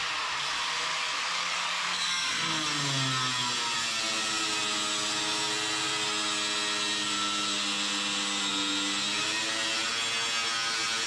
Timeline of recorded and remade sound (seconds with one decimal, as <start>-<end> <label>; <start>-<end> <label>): 0.0-0.9 recorded; 0.9-2.3 remade; 2.3-11.1 recorded